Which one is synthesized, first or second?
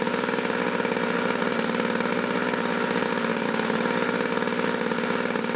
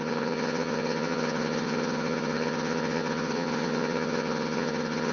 second